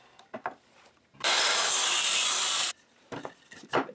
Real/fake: fake